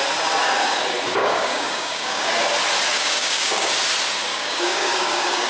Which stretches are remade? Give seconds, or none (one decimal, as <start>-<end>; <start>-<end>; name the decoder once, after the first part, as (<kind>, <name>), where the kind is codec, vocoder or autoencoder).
1.2-2.3 (codec, DAC); 2.9-3.7; 4.3-5.5

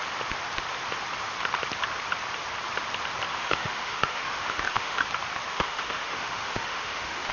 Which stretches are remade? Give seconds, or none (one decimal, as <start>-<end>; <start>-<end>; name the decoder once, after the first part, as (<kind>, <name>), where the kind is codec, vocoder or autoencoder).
3.3-5.0 (autoencoder, DAC-VAE); 5.5-7.3

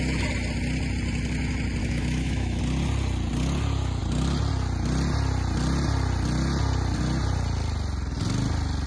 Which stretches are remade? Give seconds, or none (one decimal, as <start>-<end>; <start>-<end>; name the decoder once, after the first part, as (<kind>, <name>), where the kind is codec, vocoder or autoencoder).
1.8-2.6 (autoencoder, DAC-VAE)

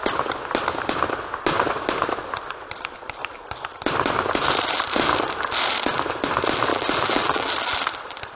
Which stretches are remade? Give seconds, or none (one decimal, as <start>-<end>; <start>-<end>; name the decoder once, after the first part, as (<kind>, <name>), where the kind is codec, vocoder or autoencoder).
6.7-7.5 (vocoder, BigVGAN v2)

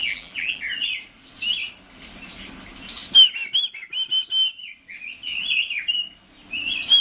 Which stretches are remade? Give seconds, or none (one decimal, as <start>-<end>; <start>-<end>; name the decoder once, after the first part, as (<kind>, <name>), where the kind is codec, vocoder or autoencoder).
0.0-0.6 (vocoder, BigVGAN v2)

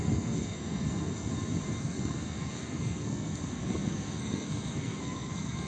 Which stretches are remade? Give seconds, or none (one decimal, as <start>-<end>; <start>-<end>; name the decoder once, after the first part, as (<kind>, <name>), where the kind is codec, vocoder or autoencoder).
0.0-1.3 (codec, SNAC); 1.8-5.7